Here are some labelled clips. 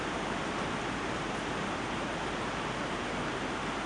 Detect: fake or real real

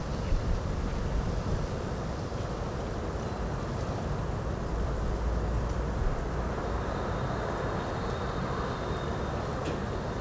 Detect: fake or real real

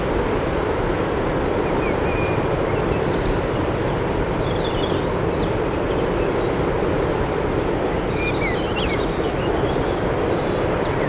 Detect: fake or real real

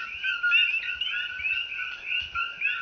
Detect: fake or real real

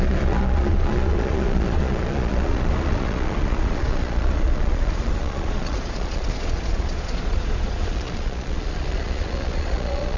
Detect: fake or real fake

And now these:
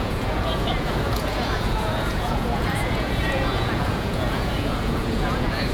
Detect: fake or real fake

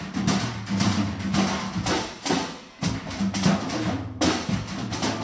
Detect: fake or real real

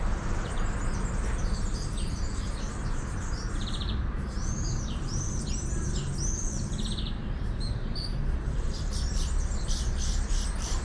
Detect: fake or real fake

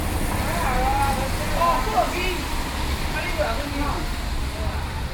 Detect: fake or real real